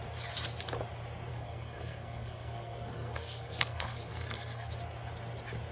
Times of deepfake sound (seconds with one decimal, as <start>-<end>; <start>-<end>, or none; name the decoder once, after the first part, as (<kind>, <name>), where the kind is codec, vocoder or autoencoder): 1.3-4.7 (codec, SNAC)